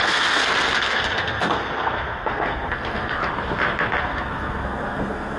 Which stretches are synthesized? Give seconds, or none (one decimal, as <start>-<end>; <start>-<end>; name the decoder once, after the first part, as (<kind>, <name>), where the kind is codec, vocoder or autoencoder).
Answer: 0.0-3.2 (codec, SNAC); 4.0-5.4